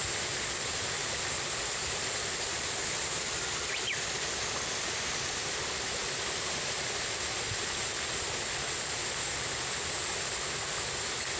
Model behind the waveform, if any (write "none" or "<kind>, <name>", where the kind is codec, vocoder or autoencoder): none